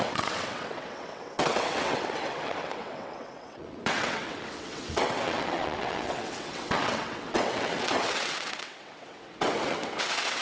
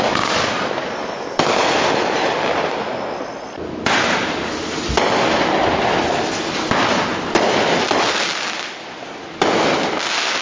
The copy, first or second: first